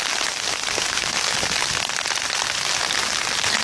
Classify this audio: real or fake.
real